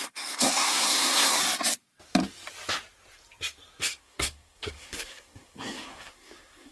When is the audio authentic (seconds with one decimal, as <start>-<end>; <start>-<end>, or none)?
1.4-3.8